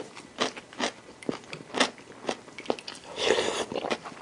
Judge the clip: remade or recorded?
recorded